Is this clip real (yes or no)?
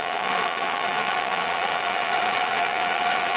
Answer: no